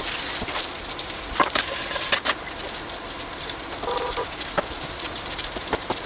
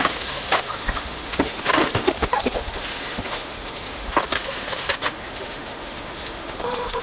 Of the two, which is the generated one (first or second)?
second